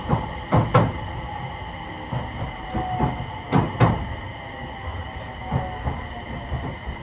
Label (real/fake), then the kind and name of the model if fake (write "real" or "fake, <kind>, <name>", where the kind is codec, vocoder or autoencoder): real